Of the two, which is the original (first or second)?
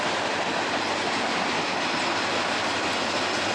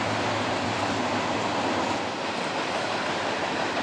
first